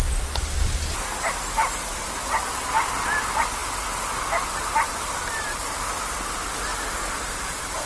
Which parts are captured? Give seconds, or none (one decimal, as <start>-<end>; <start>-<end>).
0.0-7.9